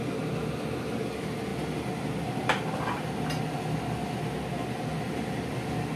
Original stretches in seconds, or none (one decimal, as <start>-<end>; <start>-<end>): 0.0-6.0